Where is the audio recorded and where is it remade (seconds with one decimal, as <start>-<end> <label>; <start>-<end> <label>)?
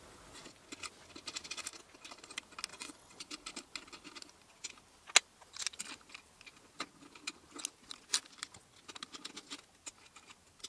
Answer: 0.0-2.7 recorded; 2.7-3.2 remade; 3.2-10.7 recorded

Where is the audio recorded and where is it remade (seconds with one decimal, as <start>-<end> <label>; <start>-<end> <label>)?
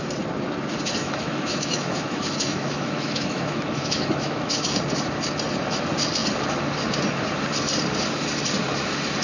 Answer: 0.0-1.0 recorded; 1.0-4.8 remade; 4.8-9.2 recorded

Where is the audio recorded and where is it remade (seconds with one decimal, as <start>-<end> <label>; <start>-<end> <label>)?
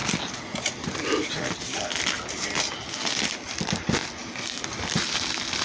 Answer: 0.0-5.6 recorded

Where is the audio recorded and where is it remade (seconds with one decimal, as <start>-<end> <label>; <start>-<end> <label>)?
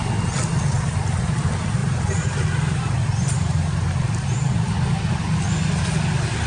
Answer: 0.0-1.8 recorded; 1.8-4.7 remade; 4.7-6.5 recorded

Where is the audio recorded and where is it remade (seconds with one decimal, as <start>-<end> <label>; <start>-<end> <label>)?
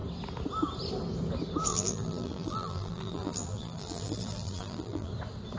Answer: 0.0-1.7 recorded; 1.7-5.1 remade; 5.1-5.6 recorded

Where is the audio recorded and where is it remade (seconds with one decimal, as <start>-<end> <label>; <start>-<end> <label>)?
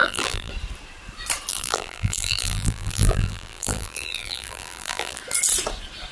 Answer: 0.0-0.5 remade; 0.5-1.5 recorded; 1.5-5.2 remade; 5.2-6.1 recorded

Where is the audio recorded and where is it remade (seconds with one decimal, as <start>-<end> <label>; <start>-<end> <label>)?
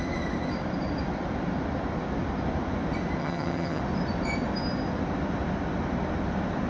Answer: 0.0-3.2 recorded; 3.2-3.8 remade; 3.8-6.7 recorded